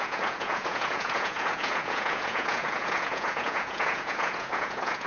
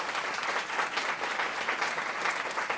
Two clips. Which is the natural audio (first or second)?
second